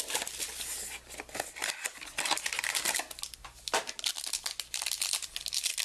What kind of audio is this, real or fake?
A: real